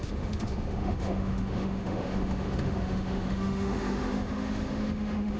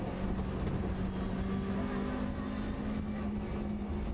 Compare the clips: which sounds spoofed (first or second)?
first